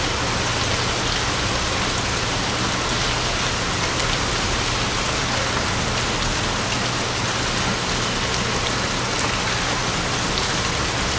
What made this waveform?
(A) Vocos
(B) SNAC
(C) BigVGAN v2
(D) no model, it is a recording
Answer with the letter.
D